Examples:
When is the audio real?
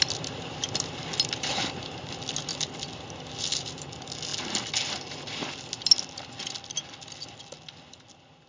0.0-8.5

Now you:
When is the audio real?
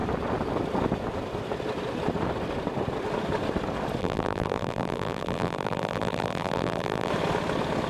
0.0-4.0; 7.1-7.9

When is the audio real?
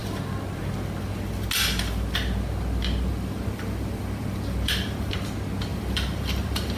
0.0-3.1; 5.1-5.7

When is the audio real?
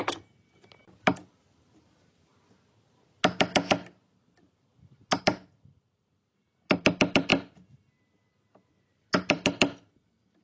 0.8-1.6; 2.3-4.2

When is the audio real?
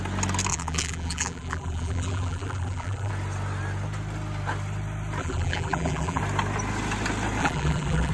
0.0-0.5; 3.1-5.2; 6.2-7.4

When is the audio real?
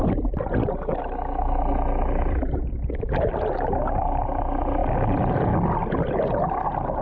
0.0-4.8; 6.5-7.0